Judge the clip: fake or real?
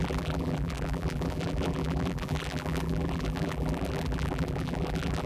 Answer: fake